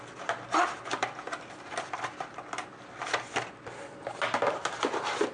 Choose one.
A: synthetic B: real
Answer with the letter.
B